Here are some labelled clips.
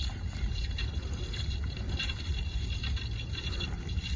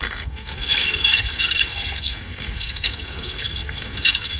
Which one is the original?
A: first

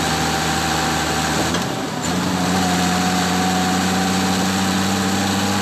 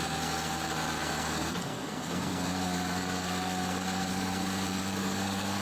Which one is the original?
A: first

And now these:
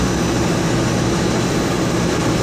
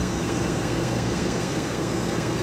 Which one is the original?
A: first